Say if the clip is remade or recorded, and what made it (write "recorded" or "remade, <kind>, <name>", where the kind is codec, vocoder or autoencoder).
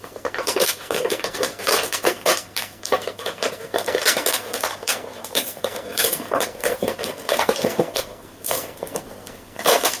remade, codec, SNAC